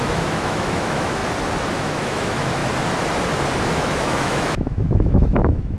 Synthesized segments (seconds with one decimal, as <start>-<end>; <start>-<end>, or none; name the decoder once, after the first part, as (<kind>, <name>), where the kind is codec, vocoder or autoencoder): 0.0-1.2 (autoencoder, DAC-VAE); 1.7-2.6; 3.6-5.8